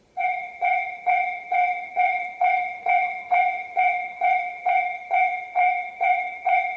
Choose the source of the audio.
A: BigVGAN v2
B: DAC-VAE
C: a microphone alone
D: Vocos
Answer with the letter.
D